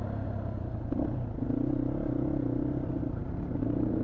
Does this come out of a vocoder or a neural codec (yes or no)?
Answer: no